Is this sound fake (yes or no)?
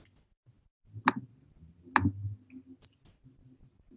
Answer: no